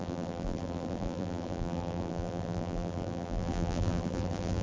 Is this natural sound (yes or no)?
no